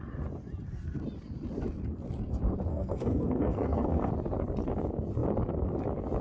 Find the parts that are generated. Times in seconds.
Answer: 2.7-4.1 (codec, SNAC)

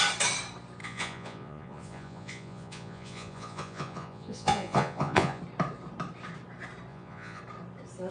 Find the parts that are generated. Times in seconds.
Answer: 0.8-5.4 (vocoder, Vocos); 6.9-7.4

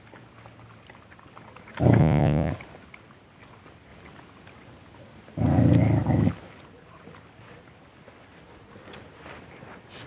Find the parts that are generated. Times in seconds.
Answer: 2.0-2.5 (vocoder, Vocos)

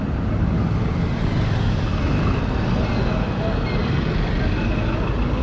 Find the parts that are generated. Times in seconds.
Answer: none

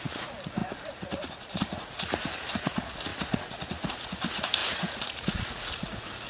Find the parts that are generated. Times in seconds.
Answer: 0.0-6.3 (vocoder, Vocos)

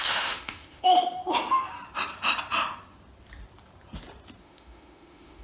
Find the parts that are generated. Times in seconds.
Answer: 0.0-1.2 (autoencoder, DAC-VAE); 4.4-5.4